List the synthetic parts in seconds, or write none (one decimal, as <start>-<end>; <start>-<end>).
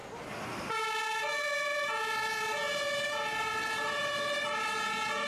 none